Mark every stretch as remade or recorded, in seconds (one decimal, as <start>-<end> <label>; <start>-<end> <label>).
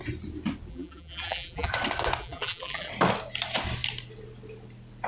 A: 0.0-0.7 recorded; 0.7-1.7 remade; 1.7-2.2 recorded; 2.2-2.9 remade; 2.9-5.1 recorded